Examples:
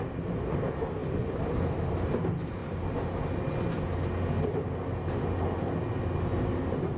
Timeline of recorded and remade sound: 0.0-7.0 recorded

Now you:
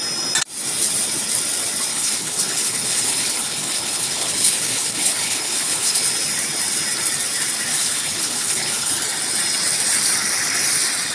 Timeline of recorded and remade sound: 0.0-1.9 recorded; 1.9-6.0 remade; 6.0-7.7 recorded; 7.7-8.9 remade; 8.9-11.1 recorded

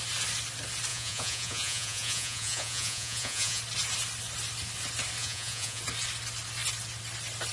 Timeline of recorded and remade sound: 0.0-0.9 recorded; 0.9-3.6 remade; 3.6-5.2 recorded; 5.2-5.8 remade; 5.8-7.5 recorded

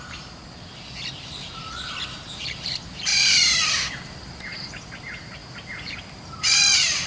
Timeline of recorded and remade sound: 0.0-0.4 remade; 0.4-2.2 recorded; 2.2-3.1 remade; 3.1-3.9 recorded; 3.9-7.1 remade

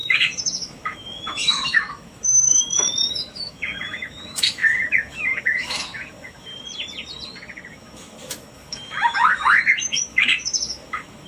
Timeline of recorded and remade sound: 0.0-6.5 remade; 6.5-7.7 recorded; 7.7-11.3 remade